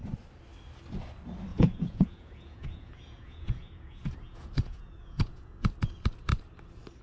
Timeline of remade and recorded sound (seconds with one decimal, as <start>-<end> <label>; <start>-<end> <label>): 0.0-1.5 recorded; 1.5-5.7 remade; 5.7-7.0 recorded